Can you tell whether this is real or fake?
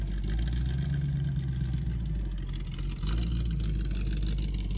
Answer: real